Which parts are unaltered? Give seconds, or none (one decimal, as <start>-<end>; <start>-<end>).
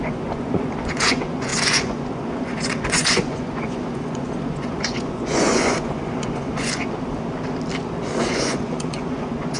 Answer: 6.8-8.2